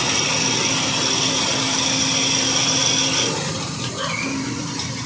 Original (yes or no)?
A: yes